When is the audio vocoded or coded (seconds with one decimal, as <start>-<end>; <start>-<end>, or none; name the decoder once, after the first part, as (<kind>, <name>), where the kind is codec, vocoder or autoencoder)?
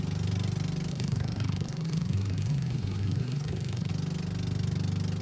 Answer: 0.9-3.9 (codec, SNAC)